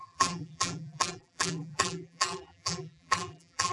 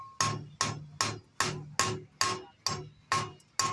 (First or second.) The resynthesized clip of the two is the first